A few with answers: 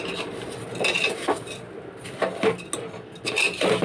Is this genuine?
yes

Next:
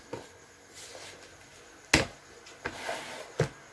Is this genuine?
yes